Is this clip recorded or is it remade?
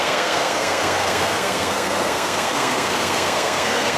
remade